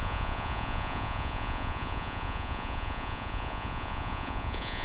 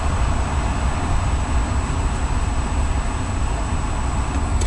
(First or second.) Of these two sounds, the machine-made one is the first